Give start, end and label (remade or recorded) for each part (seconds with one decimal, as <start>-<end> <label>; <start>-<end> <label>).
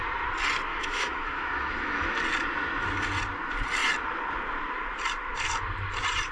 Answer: 0.0-0.7 recorded; 0.7-2.2 remade; 2.2-6.3 recorded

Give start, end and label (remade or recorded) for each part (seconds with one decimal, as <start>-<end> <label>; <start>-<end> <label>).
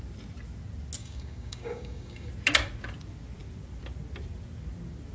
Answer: 0.0-1.0 recorded; 1.0-2.3 remade; 2.3-5.1 recorded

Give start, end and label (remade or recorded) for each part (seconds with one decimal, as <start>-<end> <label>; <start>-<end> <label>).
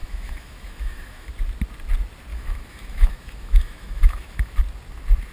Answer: 0.0-1.3 remade; 1.3-2.3 recorded; 2.3-4.6 remade; 4.6-5.3 recorded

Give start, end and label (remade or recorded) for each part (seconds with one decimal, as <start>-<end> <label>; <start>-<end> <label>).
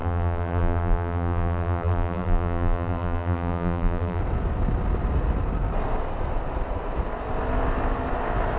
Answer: 0.0-4.2 remade; 4.2-8.6 recorded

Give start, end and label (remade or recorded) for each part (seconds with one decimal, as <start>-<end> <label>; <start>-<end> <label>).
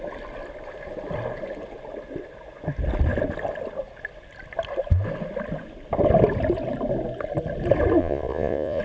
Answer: 0.0-8.0 recorded; 8.0-8.8 remade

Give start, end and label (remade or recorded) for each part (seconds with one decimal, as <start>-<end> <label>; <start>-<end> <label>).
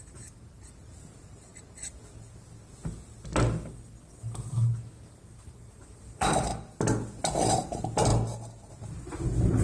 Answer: 0.0-1.5 remade; 1.5-5.3 recorded; 5.3-6.5 remade; 6.5-7.5 recorded; 7.5-8.1 remade; 8.1-8.7 recorded; 8.7-9.6 remade